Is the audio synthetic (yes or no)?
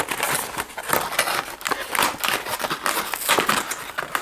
no